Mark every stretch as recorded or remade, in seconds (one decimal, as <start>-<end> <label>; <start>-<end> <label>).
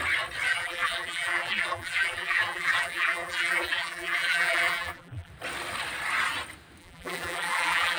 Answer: 0.0-0.5 recorded; 0.5-5.3 remade; 5.3-6.8 recorded; 6.8-8.0 remade